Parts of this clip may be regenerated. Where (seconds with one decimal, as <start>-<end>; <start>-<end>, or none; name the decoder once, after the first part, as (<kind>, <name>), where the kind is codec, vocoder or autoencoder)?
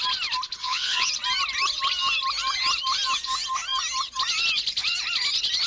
0.6-1.1 (vocoder, Vocos)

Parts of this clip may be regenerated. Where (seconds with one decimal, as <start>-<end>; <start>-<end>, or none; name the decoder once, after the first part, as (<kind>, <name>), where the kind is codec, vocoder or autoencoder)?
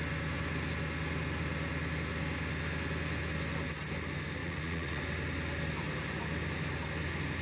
4.4-5.0 (vocoder, Vocos)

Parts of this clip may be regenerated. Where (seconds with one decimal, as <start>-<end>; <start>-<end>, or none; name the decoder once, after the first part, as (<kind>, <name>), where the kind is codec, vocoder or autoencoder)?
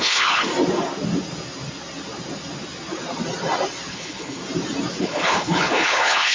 0.0-0.5 (codec, HILCodec); 3.9-4.4; 5.0-6.3